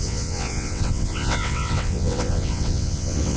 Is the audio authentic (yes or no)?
no